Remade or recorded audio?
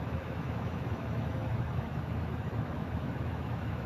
remade